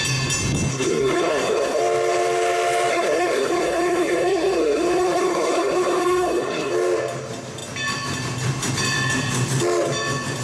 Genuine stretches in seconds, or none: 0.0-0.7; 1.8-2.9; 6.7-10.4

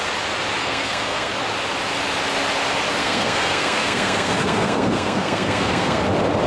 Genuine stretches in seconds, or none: 0.0-0.6; 1.3-3.0; 6.0-6.5

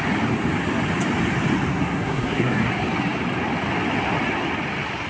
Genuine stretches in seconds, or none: 0.0-1.7; 2.7-5.1

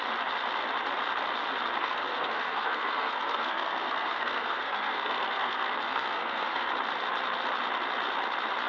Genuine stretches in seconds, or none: 0.0-1.8; 6.7-8.7

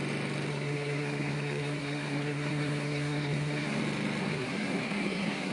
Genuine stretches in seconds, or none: 0.0-0.5; 3.8-4.2

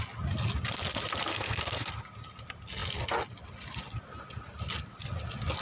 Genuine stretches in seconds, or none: 0.0-1.3; 1.9-5.6

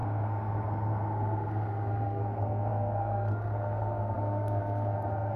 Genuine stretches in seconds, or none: none